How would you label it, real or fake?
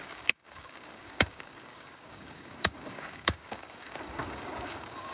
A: fake